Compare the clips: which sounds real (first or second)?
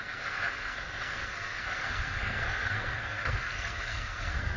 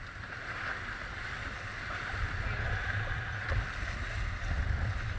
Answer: second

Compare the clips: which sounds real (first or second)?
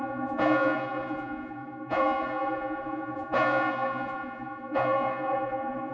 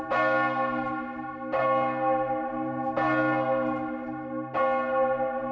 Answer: second